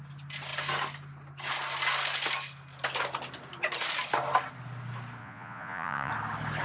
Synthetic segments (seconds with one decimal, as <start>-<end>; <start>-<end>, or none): 5.2-6.1